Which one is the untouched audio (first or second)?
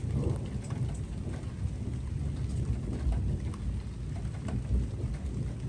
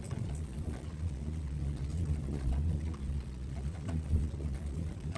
first